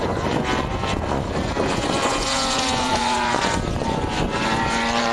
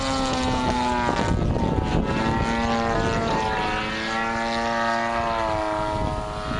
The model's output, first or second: first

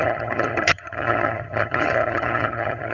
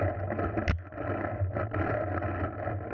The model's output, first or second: first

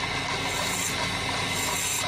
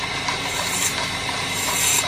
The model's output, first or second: second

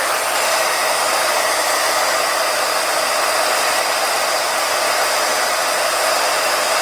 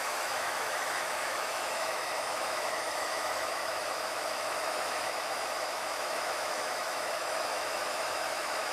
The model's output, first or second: second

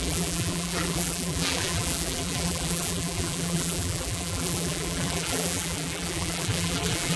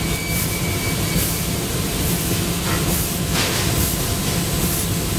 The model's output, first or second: first